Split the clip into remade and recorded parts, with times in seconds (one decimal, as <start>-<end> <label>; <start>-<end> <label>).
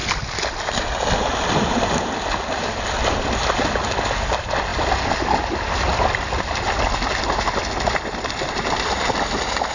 0.0-9.7 recorded